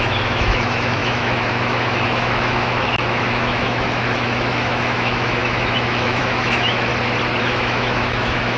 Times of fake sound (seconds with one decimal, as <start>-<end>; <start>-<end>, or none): 0.0-6.9; 7.4-8.6